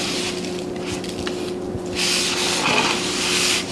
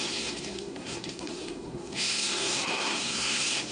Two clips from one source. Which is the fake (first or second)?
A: second